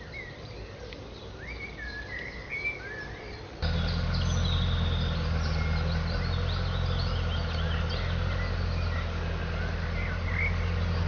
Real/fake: real